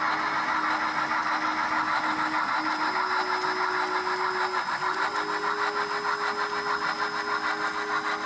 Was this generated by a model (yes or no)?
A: no